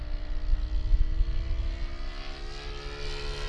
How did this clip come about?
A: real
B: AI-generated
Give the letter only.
A